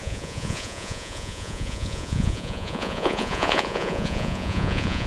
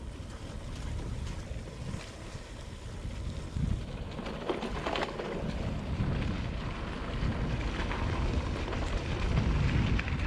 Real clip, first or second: second